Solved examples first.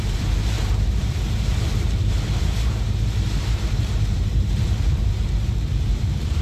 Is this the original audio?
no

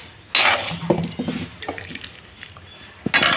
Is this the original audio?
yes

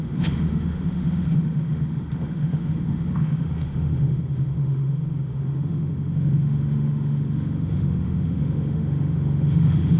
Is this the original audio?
no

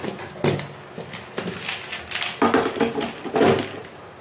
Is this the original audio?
yes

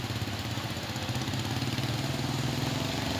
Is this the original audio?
yes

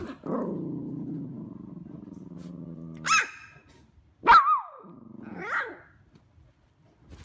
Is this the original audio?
yes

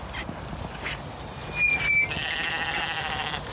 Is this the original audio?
yes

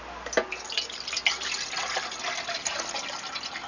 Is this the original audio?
yes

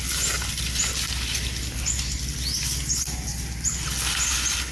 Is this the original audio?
yes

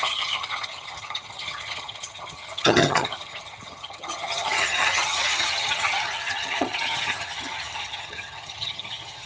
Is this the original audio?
no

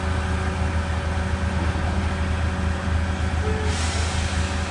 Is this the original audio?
yes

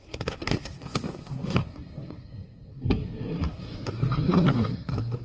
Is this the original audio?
no